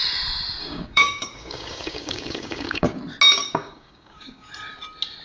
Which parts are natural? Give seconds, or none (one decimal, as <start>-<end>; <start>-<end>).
0.0-0.6; 3.0-3.4; 4.5-5.2